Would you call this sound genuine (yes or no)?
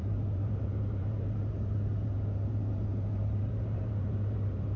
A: no